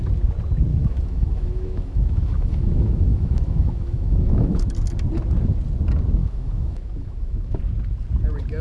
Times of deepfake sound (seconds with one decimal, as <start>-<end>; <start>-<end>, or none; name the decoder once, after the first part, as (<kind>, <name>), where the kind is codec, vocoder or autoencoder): 0.7-4.6 (autoencoder, DAC-VAE); 6.2-7.6